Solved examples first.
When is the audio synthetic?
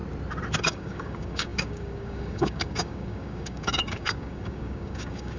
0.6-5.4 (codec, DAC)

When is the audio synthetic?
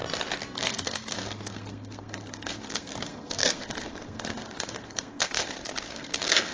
0.6-6.5 (codec, SNAC)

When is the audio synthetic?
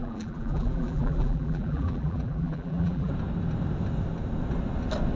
0.0-3.1 (vocoder, BigVGAN v2)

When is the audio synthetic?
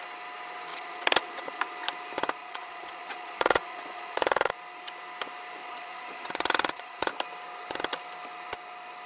0.7-1.6 (vocoder, Vocos); 2.4-4.5; 5.6-7.1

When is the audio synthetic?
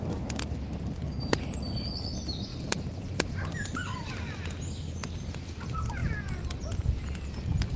none